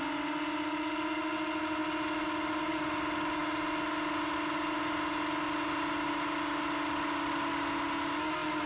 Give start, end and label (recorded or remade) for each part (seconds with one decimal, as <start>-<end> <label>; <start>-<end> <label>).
0.0-8.7 recorded